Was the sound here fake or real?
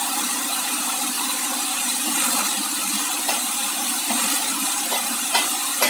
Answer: fake